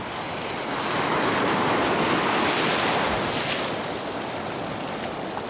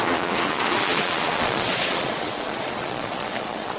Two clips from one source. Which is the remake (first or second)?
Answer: second